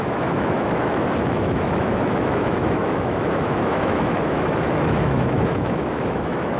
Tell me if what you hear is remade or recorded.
remade